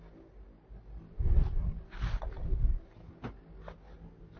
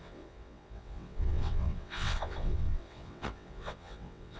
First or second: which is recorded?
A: first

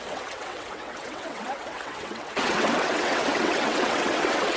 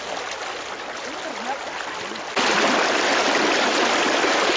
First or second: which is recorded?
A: second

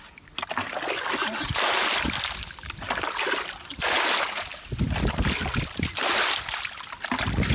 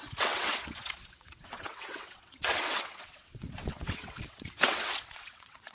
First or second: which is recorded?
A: first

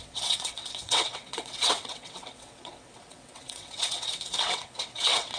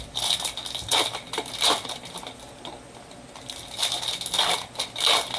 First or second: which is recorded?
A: second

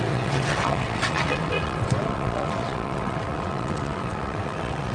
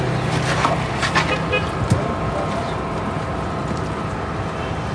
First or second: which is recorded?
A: second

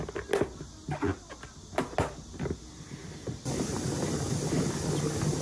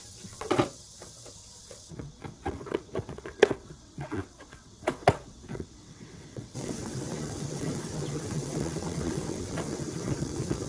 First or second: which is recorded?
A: first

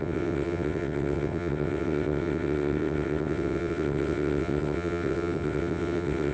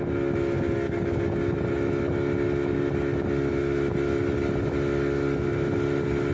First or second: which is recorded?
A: second